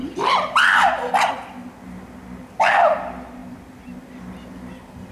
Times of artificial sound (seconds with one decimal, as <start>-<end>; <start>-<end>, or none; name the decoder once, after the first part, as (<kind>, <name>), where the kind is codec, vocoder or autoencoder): none